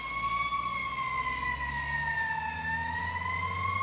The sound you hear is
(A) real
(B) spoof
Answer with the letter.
A